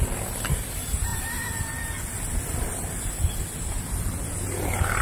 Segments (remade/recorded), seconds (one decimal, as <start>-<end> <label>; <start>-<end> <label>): 0.0-5.0 recorded